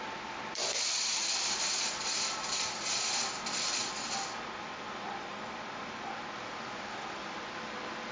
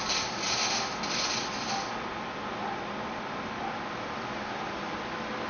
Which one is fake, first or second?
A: first